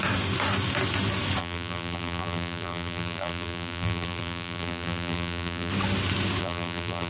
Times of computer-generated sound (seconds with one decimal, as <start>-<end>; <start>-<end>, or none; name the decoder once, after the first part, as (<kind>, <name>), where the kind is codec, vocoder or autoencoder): 1.4-5.7 (vocoder, BigVGAN v2); 6.4-7.1